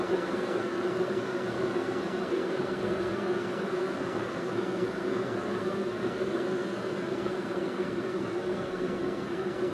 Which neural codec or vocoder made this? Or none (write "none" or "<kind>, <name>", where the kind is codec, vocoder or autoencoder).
codec, SNAC